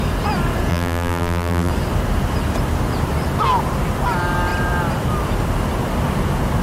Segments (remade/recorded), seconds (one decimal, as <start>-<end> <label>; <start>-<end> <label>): 0.0-0.7 recorded; 0.7-1.7 remade; 1.7-6.6 recorded